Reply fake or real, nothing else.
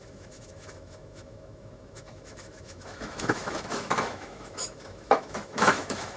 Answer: fake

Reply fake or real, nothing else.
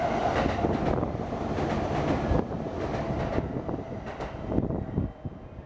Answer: real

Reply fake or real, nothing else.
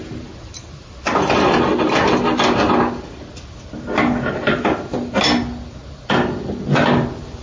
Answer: real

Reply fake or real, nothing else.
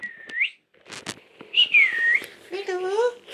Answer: real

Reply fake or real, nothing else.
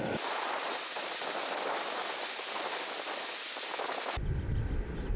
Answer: real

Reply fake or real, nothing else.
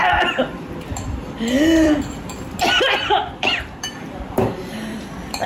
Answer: fake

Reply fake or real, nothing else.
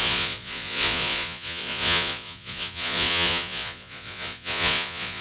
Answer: fake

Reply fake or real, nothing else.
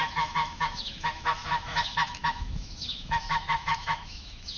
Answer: fake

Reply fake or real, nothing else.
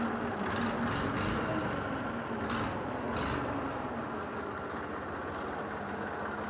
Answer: real